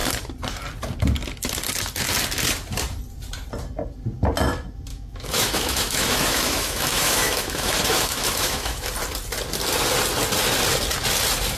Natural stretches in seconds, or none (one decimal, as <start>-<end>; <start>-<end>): 0.0-4.9; 8.9-11.6